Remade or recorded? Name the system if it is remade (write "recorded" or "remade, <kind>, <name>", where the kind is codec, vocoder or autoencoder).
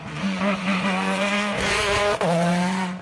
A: remade, vocoder, Vocos